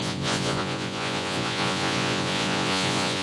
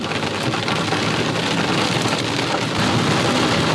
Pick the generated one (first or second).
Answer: first